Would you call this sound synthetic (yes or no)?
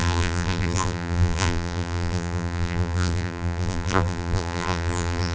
yes